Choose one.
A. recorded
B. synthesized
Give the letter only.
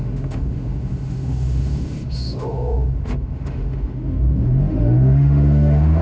B